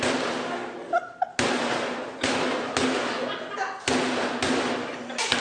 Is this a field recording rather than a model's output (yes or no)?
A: yes